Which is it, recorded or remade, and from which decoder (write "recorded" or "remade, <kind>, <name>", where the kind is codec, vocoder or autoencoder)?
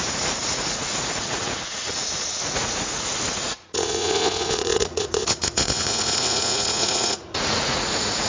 remade, vocoder, Vocos